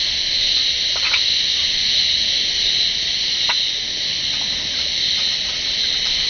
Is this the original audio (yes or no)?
yes